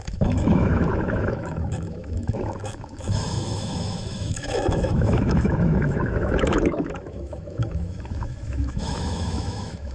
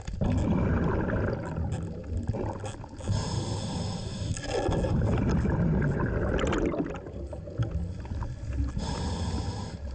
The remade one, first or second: first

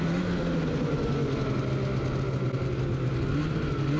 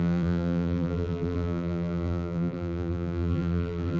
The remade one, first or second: second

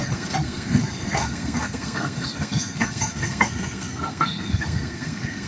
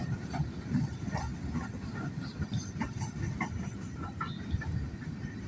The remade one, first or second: first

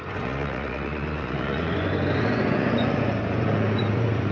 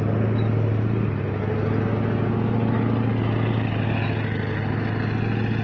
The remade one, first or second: first